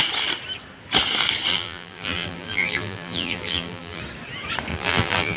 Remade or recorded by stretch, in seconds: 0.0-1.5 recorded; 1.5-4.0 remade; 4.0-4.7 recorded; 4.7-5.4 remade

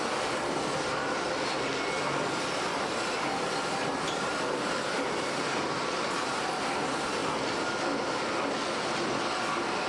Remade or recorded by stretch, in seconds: 0.0-9.9 recorded

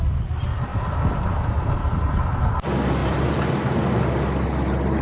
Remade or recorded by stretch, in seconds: 0.0-0.7 recorded; 0.7-2.4 remade; 2.4-3.0 recorded; 3.0-3.5 remade; 3.5-5.0 recorded

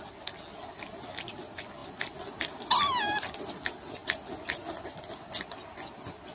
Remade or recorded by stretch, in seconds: 0.0-6.3 recorded